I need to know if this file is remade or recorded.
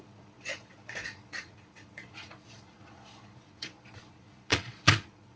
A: remade